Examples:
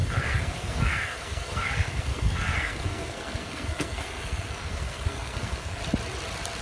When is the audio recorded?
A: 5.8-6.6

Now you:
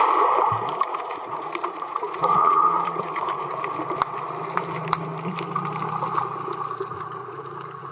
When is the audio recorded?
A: 0.0-0.9; 3.6-7.2

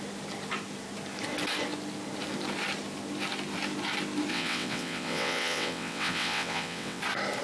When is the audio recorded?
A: 0.0-4.3; 7.0-7.4